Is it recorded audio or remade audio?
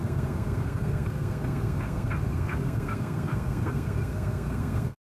remade